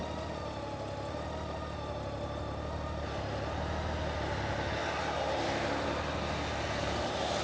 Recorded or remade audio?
recorded